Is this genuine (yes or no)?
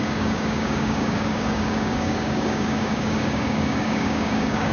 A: no